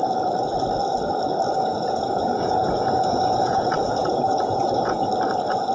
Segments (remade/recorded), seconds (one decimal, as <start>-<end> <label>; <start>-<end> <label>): 0.0-1.7 recorded; 1.7-5.1 remade; 5.1-5.7 recorded